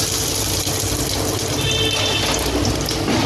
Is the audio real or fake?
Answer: real